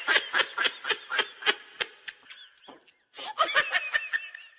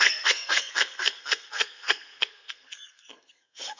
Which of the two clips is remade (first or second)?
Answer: second